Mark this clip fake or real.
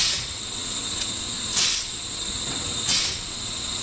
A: fake